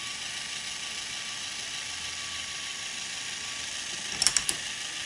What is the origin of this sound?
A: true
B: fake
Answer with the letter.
A